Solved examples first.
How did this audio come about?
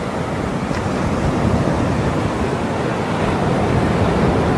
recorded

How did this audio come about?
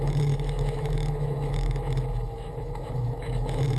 remade